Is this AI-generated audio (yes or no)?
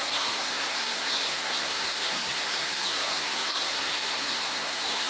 yes